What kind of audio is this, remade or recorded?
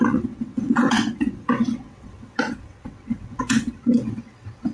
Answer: remade